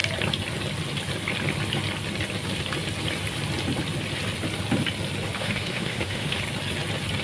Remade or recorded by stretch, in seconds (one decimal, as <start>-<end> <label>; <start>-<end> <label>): 0.0-5.4 recorded; 5.4-6.4 remade; 6.4-7.2 recorded